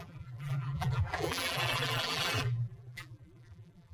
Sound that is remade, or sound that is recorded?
remade